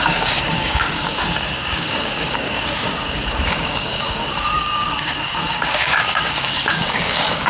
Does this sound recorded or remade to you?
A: remade